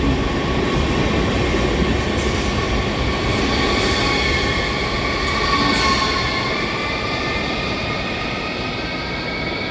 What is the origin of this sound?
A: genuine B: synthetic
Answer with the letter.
A